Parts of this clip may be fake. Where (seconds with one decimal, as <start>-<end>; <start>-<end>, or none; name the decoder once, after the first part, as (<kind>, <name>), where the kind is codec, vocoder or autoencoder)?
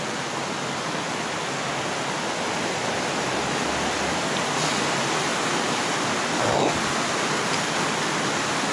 none